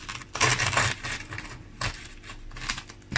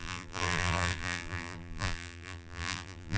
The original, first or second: first